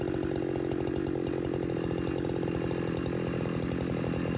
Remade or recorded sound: recorded